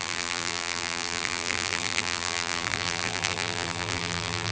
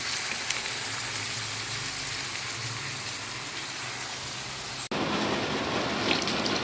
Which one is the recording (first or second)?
second